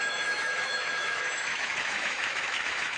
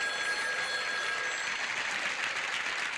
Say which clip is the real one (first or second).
second